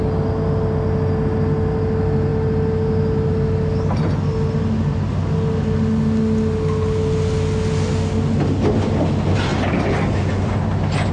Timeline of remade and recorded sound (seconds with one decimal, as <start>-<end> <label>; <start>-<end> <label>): 0.0-9.5 recorded; 9.5-10.0 remade; 10.0-11.1 recorded